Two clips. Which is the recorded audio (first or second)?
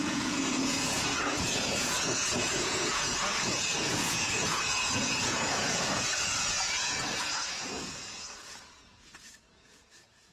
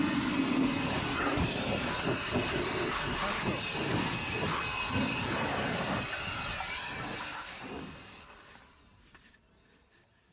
second